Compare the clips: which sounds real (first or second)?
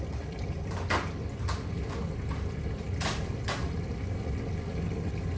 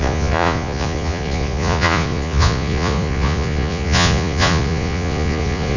first